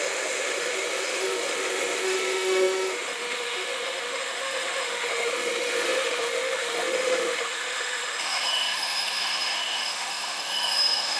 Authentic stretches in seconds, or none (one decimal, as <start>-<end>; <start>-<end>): none